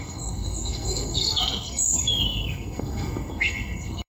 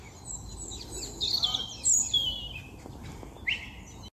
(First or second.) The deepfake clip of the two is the first